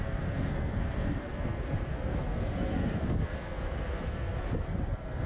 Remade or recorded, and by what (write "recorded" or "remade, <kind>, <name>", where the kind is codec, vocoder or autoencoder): remade, codec, SNAC